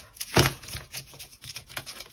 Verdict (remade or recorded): remade